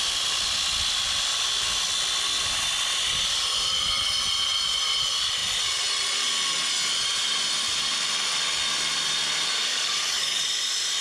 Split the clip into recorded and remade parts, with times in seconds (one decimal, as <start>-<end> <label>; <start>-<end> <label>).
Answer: 0.0-9.7 recorded; 9.7-10.4 remade; 10.4-11.0 recorded